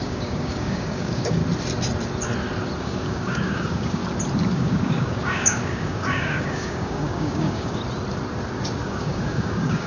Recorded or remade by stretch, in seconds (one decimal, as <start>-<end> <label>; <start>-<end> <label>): 0.0-1.4 remade; 1.4-2.8 recorded; 2.8-4.0 remade; 4.0-4.5 recorded; 4.5-7.8 remade; 7.8-8.8 recorded; 8.8-9.9 remade